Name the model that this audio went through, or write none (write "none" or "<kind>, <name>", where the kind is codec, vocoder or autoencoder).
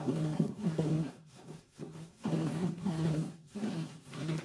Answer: codec, SNAC